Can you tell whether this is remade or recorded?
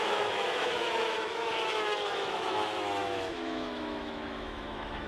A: remade